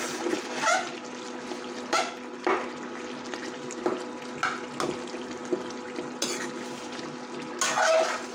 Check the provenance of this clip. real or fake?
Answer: real